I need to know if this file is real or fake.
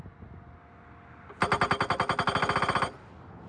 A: real